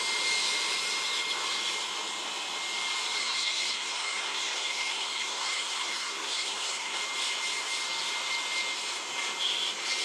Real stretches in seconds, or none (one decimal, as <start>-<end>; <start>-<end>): 0.0-3.2; 7.0-10.0